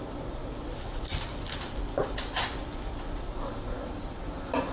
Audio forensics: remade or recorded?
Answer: recorded